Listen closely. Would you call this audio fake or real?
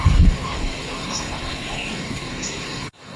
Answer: fake